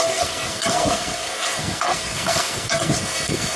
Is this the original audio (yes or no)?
no